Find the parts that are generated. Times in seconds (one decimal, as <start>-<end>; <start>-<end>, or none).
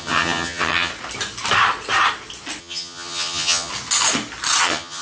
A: 0.0-0.9; 2.6-3.7; 4.6-5.0